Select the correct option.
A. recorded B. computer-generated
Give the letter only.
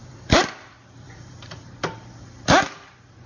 B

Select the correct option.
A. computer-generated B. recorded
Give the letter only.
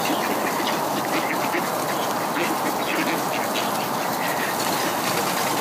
B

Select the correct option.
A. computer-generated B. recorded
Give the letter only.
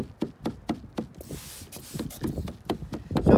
B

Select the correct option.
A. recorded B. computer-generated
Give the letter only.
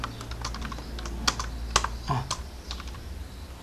A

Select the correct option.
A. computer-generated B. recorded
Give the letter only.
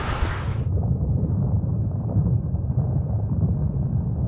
B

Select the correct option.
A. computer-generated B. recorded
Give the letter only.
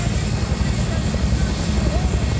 B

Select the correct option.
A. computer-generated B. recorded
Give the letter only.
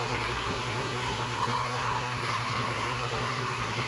A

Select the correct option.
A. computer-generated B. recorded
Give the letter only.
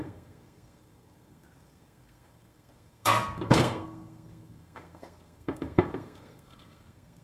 A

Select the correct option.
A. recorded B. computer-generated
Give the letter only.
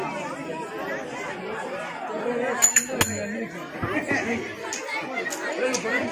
A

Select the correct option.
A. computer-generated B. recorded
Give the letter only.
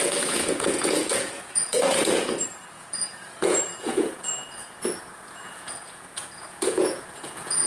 A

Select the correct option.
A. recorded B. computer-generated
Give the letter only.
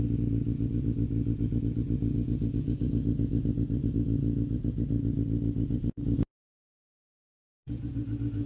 B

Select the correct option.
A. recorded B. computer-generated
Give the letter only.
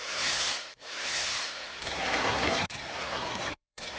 B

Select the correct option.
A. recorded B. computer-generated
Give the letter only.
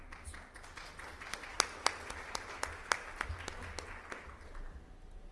A